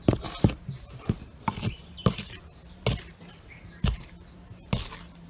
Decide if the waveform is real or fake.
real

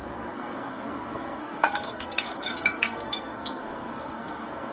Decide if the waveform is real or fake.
fake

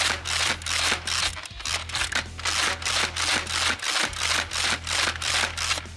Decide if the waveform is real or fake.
real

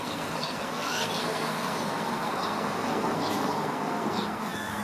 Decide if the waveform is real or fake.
fake